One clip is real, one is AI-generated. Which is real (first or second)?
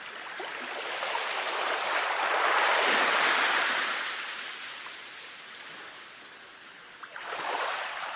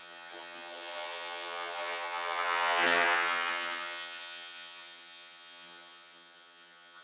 first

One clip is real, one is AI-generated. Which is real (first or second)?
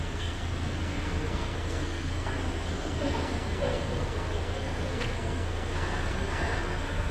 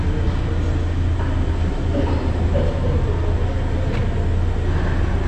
second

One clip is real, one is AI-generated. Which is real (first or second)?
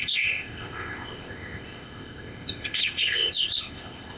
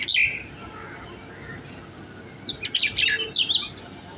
second